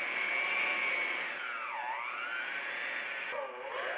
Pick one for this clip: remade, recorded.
recorded